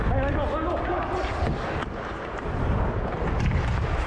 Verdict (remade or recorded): recorded